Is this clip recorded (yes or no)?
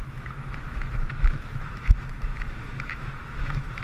no